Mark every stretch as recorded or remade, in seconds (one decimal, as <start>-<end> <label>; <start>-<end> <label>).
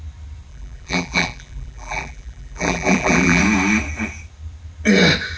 0.0-0.5 recorded; 0.5-3.4 remade; 3.4-5.4 recorded